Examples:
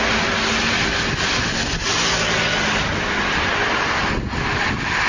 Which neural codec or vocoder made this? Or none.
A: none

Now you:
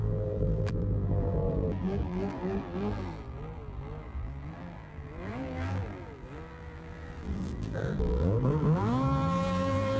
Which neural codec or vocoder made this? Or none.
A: vocoder, BigVGAN v2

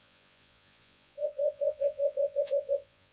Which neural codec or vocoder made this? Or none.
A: vocoder, Vocos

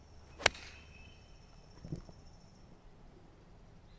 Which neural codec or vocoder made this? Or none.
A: none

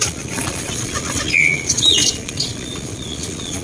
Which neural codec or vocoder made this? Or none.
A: vocoder, Vocos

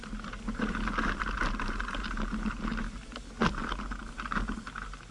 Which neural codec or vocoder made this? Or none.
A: none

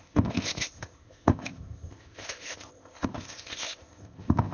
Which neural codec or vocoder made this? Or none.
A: codec, ZipCodec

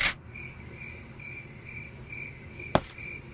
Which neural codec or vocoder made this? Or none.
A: none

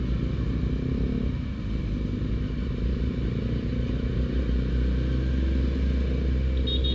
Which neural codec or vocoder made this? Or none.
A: none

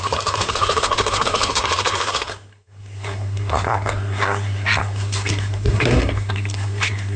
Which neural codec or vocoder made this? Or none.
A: codec, SNAC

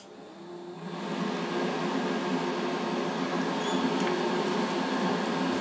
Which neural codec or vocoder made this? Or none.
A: none